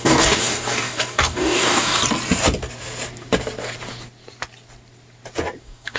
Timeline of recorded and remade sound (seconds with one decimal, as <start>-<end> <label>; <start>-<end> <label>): 0.0-2.0 remade; 2.0-5.6 recorded; 5.6-6.0 remade